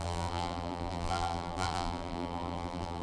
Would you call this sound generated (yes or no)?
yes